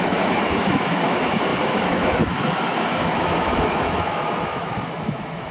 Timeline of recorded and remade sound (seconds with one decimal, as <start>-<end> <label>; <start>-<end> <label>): 0.0-5.5 remade